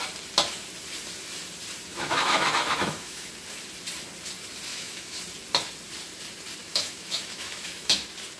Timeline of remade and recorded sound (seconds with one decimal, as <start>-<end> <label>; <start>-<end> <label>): 0.0-1.9 recorded; 1.9-3.3 remade; 3.3-4.7 recorded; 4.7-5.2 remade; 5.2-6.6 recorded; 6.6-8.0 remade; 8.0-8.4 recorded